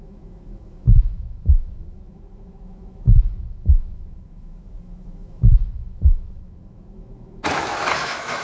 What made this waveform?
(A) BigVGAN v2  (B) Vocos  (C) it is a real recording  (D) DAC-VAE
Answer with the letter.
D